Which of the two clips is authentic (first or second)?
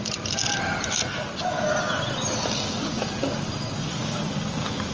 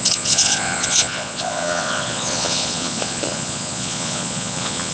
first